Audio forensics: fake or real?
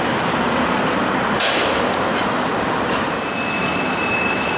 real